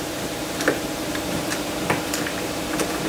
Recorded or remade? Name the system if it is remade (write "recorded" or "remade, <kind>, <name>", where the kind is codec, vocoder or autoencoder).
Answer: remade, vocoder, BigVGAN v2